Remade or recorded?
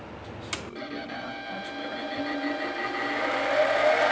recorded